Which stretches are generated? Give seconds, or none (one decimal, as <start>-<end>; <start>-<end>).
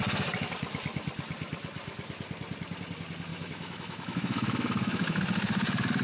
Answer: 3.3-5.2